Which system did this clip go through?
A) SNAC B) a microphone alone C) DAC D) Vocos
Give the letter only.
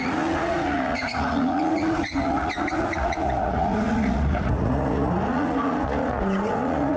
D